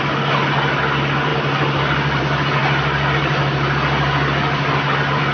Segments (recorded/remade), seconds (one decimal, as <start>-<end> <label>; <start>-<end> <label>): 0.0-5.3 recorded